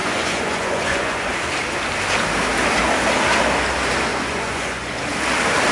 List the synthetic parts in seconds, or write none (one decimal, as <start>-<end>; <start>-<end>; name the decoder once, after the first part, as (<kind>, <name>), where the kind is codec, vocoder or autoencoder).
0.0-1.3 (vocoder, Vocos); 4.1-5.0